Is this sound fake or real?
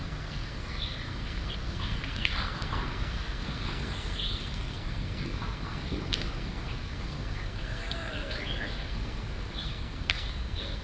fake